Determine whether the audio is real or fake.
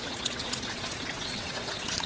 fake